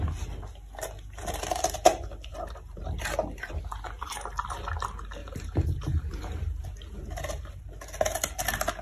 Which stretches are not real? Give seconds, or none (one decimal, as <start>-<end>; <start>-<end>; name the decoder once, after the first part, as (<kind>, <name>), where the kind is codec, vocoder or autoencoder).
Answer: 2.3-3.5 (vocoder, BigVGAN v2); 5.2-7.6